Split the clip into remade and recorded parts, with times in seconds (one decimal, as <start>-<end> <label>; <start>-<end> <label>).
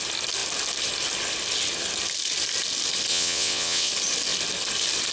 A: 0.0-3.1 recorded; 3.1-3.9 remade; 3.9-5.1 recorded